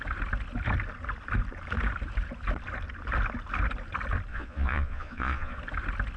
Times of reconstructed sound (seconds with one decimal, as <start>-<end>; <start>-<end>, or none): 4.3-5.6